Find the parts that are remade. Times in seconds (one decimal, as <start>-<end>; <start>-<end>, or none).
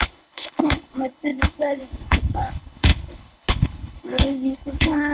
0.0-5.1